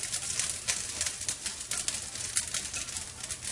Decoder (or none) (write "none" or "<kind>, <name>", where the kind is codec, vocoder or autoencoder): none